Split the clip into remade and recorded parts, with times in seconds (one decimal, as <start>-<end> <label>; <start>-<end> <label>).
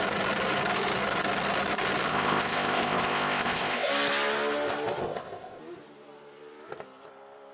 0.0-2.1 recorded; 2.1-3.9 remade; 3.9-5.0 recorded; 5.0-5.6 remade; 5.6-7.5 recorded